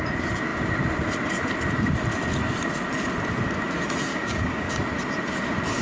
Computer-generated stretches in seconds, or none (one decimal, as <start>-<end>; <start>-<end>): 4.1-4.7